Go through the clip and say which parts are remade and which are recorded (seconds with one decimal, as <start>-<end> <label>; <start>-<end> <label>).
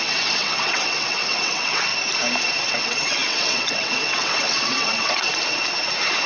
0.0-1.9 remade; 1.9-2.6 recorded; 2.6-5.3 remade; 5.3-6.3 recorded